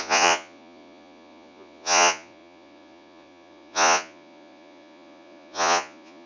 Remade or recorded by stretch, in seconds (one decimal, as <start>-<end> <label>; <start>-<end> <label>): 0.0-6.3 remade